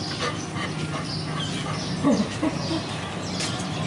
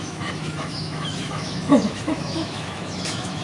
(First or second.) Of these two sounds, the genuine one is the first